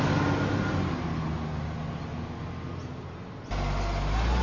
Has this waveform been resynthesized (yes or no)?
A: no